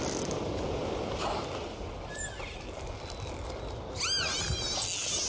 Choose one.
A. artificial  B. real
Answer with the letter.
B